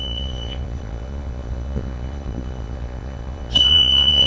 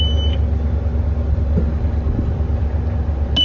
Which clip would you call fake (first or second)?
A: first